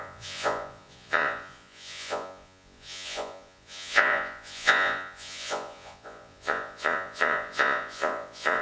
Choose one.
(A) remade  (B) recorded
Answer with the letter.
A